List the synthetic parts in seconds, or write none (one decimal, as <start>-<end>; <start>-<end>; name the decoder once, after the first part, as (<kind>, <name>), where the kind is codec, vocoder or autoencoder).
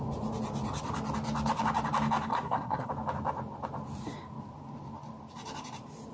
2.3-2.9 (codec, SNAC)